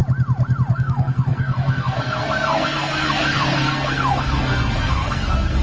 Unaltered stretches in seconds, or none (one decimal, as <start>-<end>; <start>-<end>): 0.0-0.7